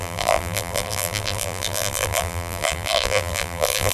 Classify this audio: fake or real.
fake